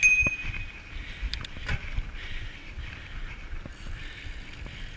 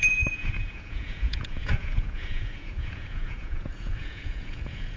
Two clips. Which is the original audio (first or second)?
first